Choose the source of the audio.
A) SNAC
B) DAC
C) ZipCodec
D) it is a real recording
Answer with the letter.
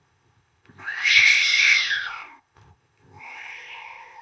C